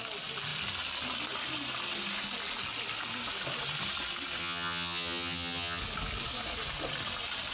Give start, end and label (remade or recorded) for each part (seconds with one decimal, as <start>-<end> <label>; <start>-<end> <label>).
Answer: 0.0-4.4 recorded; 4.4-5.8 remade; 5.8-7.5 recorded